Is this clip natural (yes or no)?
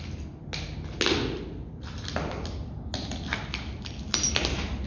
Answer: yes